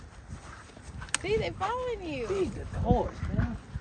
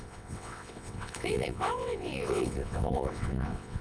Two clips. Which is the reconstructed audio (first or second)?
second